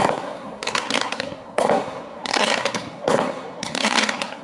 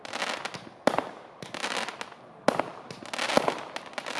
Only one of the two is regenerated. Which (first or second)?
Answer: first